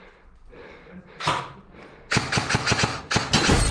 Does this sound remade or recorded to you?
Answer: recorded